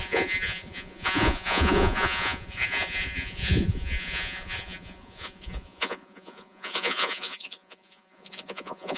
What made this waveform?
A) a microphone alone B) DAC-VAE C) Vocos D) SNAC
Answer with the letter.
C